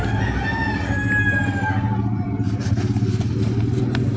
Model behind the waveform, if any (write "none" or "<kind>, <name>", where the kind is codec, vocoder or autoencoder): none